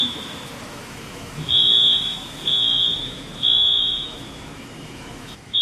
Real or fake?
fake